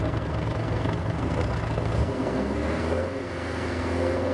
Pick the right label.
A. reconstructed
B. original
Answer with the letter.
A